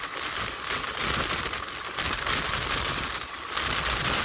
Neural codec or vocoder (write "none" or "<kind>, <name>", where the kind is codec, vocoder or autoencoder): none